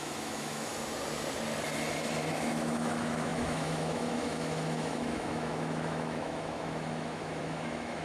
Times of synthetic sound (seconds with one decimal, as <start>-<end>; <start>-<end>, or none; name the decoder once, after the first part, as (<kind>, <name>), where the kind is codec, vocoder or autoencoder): 0.0-0.7 (autoencoder, DAC-VAE); 2.3-8.0